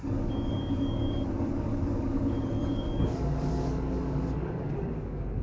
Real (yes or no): no